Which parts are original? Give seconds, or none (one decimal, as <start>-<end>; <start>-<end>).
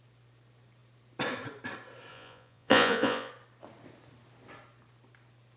0.0-2.1; 3.3-5.6